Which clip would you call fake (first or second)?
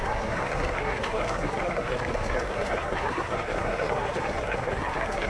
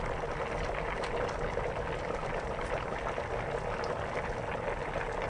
first